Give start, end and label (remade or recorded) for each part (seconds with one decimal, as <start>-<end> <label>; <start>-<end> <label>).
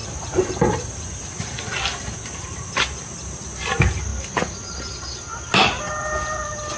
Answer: 0.0-6.8 recorded